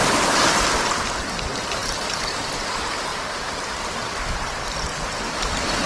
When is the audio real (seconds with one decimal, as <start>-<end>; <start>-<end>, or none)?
0.0-1.8; 2.5-5.9